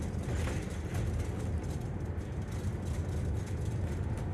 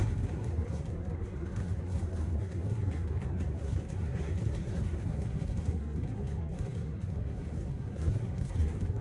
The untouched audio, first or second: first